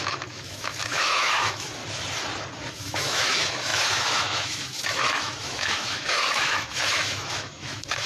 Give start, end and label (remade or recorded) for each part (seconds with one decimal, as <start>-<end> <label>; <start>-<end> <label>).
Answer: 0.0-1.8 remade; 1.8-2.7 recorded; 2.7-8.1 remade